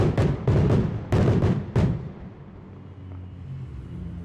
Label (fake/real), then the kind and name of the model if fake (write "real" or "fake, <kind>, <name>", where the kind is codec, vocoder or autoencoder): real